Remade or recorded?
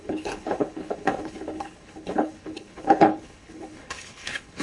remade